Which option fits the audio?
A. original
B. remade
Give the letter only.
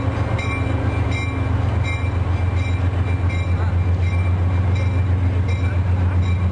A